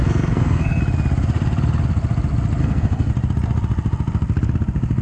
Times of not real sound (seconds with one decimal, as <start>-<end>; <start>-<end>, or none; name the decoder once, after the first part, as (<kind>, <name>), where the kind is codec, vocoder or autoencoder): 0.0-0.8 (codec, SNAC); 2.6-3.1